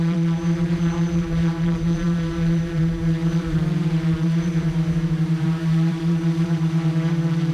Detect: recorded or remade remade